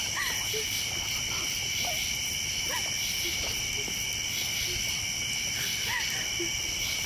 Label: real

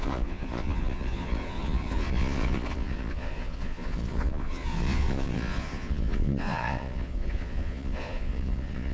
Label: fake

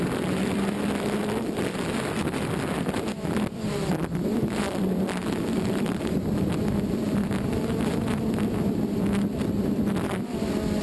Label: fake